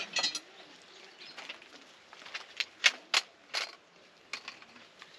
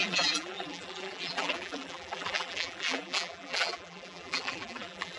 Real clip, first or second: first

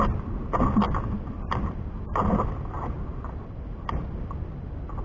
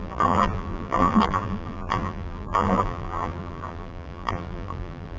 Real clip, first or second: first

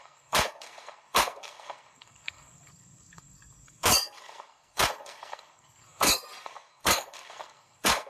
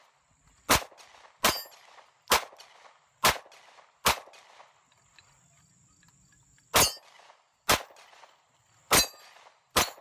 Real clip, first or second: second